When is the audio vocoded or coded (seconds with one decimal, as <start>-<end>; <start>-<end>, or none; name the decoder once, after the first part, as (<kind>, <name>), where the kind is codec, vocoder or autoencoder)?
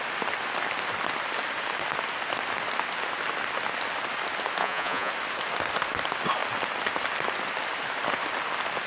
4.6-5.1 (vocoder, Vocos)